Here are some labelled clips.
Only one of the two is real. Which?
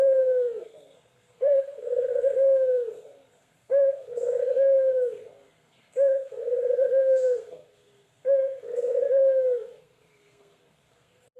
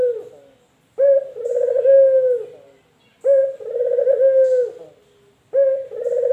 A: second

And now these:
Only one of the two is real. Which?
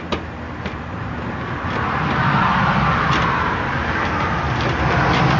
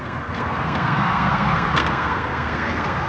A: first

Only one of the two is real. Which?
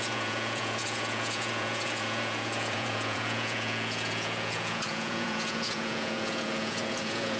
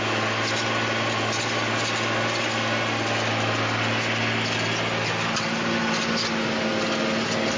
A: second